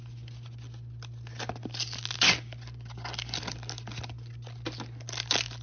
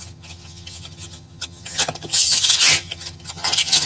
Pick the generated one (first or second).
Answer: second